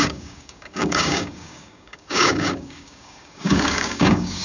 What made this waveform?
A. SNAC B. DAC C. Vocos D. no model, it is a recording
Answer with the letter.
B